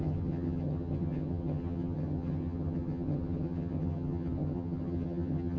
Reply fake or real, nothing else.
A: fake